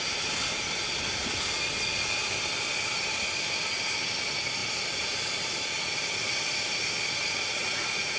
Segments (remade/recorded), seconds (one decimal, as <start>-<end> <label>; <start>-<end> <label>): 0.0-7.6 recorded; 7.6-8.2 remade